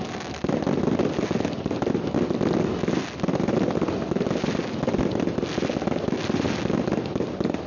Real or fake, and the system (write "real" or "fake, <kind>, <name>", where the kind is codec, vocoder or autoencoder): real